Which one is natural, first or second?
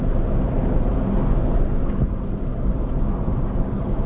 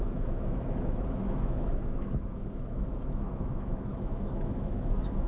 first